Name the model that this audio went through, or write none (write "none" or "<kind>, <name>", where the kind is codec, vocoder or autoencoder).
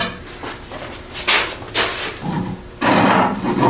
none